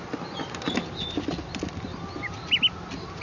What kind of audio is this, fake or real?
real